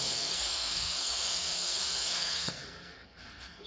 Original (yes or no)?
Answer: no